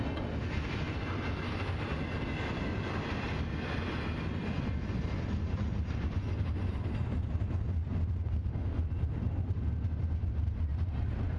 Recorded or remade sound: recorded